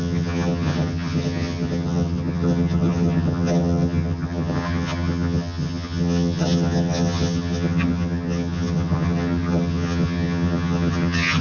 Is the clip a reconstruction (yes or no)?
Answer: yes